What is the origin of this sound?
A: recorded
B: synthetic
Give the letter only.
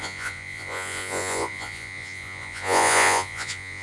B